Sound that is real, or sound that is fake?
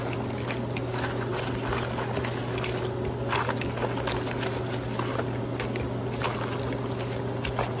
real